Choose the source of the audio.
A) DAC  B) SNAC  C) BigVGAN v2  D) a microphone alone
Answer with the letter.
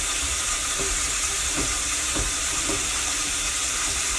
C